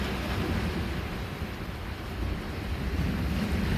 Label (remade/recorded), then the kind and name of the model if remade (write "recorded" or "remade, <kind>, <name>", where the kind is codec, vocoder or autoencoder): recorded